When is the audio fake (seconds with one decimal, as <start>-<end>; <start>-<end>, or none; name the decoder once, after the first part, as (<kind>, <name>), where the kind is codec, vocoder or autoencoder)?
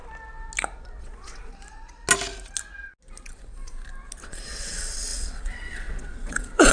1.0-1.5 (vocoder, WaveNeXt); 4.2-6.7